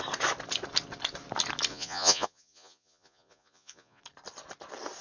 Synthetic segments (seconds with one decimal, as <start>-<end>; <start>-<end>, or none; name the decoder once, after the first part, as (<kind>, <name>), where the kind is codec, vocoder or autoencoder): 1.7-4.0 (vocoder, Vocos)